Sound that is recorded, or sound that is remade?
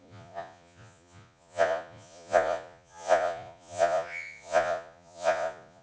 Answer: remade